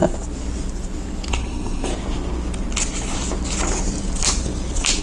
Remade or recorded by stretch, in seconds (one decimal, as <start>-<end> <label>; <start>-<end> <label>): 0.0-1.3 recorded; 1.3-1.9 remade; 1.9-5.0 recorded